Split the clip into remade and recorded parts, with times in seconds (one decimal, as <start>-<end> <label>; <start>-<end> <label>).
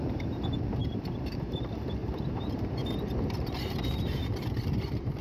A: 0.0-5.2 remade